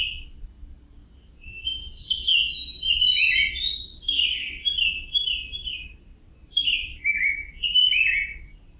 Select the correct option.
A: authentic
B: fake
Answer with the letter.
A